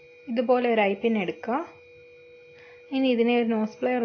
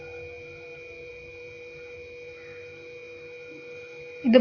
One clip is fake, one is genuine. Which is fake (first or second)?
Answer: second